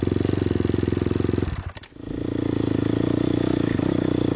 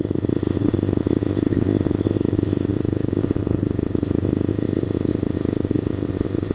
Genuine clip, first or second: first